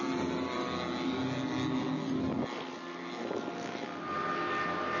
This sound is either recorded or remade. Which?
recorded